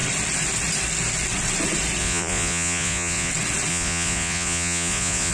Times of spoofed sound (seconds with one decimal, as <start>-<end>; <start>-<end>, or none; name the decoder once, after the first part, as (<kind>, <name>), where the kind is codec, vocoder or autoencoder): 2.0-3.3 (vocoder, Vocos); 3.7-5.3